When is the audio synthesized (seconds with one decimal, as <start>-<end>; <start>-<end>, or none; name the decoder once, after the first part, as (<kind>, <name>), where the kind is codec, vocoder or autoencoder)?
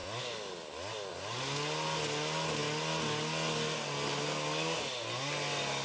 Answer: none